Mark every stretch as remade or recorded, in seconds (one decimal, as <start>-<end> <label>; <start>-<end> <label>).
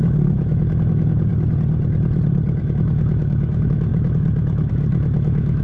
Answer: 0.0-1.3 remade; 1.3-2.6 recorded; 2.6-5.6 remade